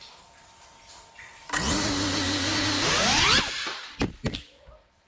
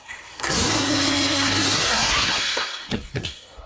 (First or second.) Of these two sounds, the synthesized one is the second